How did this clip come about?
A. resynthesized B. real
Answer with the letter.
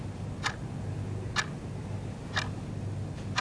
B